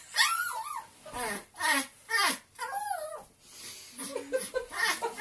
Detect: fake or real real